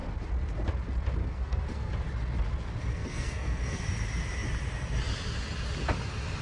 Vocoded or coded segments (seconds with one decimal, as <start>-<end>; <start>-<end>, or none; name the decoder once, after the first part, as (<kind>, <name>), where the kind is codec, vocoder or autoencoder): 1.2-1.9 (codec, SNAC); 2.9-3.8